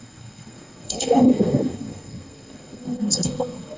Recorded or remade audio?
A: remade